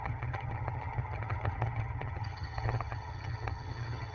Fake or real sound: fake